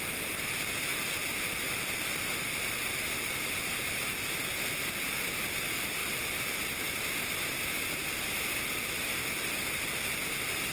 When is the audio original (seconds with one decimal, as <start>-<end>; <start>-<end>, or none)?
0.0-0.9; 4.5-6.0; 6.6-10.7